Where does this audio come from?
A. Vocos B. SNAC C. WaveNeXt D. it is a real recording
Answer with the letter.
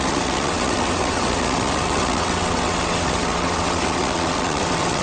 C